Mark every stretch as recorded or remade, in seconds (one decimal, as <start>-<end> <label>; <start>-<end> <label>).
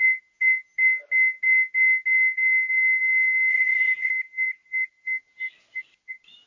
0.0-3.5 recorded; 3.5-4.1 remade; 4.1-6.5 recorded